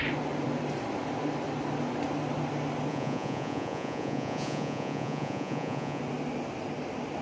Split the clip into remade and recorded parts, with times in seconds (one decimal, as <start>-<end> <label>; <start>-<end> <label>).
0.0-2.9 recorded; 2.9-6.0 remade; 6.0-7.2 recorded